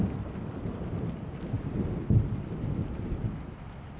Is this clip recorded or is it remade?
remade